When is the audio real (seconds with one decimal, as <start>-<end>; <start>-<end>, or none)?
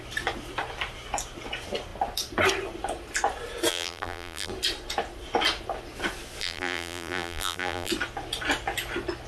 0.0-3.7; 4.5-6.4; 7.9-9.3